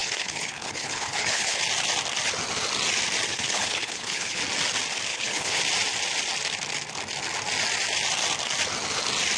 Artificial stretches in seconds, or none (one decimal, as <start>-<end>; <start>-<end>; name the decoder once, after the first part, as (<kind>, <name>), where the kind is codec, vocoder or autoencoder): 0.0-1.6 (codec, HILCodec); 3.3-4.4; 5.1-5.6